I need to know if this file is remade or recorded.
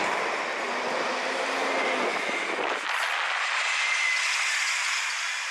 recorded